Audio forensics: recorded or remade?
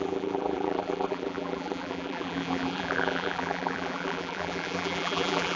remade